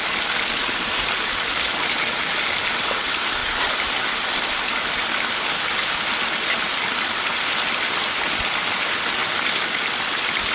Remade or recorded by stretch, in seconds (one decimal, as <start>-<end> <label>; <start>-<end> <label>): 0.0-10.5 recorded